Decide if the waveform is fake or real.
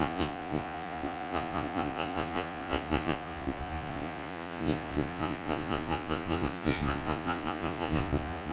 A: fake